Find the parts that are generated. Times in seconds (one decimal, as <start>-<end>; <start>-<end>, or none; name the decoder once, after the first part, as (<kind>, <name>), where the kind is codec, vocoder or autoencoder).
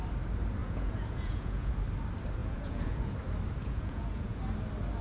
0.6-1.7 (vocoder, Vocos); 2.4-3.1; 3.6-4.4